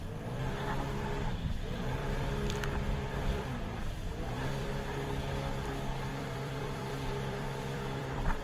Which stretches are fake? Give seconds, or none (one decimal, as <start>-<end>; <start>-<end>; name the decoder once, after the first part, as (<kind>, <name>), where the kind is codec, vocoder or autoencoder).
2.0-3.8 (vocoder, BigVGAN v2); 4.6-5.3; 6.1-8.4